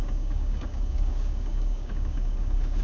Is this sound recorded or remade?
remade